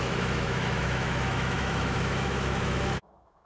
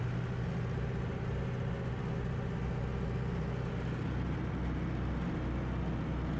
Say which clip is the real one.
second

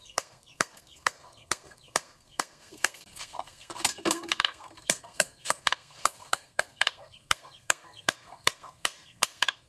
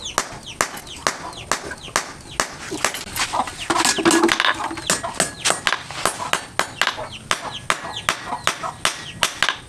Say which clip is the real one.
second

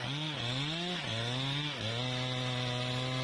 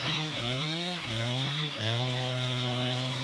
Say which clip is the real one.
first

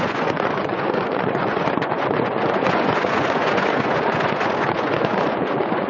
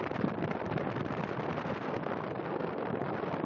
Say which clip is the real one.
second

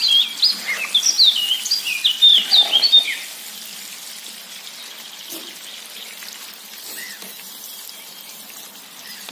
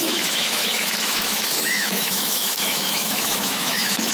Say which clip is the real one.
first